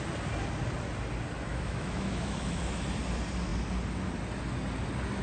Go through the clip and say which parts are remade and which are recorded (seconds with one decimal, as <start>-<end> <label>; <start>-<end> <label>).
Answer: 0.0-1.5 recorded; 1.5-2.6 remade; 2.6-5.2 recorded

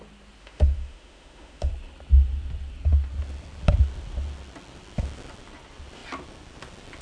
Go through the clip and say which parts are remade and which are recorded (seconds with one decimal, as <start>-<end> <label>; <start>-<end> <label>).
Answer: 0.0-0.4 recorded; 0.4-1.7 remade; 1.7-7.0 recorded

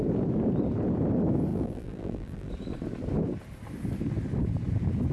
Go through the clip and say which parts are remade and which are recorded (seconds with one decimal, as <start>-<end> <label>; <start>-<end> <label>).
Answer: 0.0-1.5 recorded; 1.5-2.5 remade; 2.5-5.1 recorded

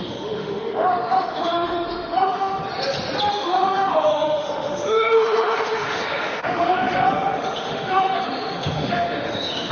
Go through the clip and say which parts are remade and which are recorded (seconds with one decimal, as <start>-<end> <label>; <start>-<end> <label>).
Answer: 0.0-2.6 remade; 2.6-3.3 recorded; 3.3-9.7 remade

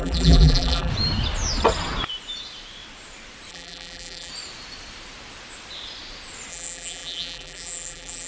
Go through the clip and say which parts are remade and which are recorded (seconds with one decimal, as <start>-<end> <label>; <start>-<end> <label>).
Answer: 0.0-0.9 remade; 0.9-3.5 recorded; 3.5-4.3 remade; 4.3-6.5 recorded; 6.5-8.3 remade